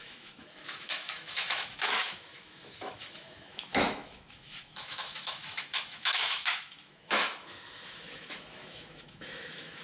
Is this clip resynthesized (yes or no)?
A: yes